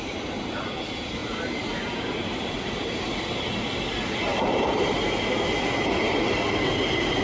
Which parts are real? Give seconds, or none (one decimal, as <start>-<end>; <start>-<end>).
0.0-1.2; 3.0-4.3; 5.2-7.2